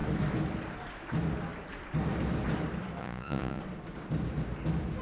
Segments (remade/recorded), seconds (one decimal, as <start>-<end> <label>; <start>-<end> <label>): 0.0-3.0 recorded; 3.0-3.6 remade; 3.6-5.0 recorded